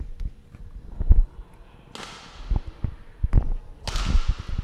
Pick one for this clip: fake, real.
real